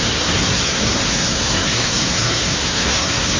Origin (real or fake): fake